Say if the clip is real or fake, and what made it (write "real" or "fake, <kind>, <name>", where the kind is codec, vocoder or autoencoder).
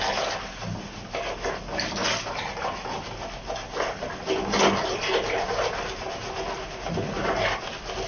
real